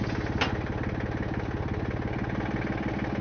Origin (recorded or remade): recorded